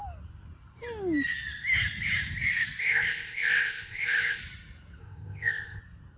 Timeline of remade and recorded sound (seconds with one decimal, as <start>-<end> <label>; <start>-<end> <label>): 0.0-2.8 recorded; 2.8-4.4 remade; 4.4-5.0 recorded; 5.0-5.8 remade; 5.8-6.2 recorded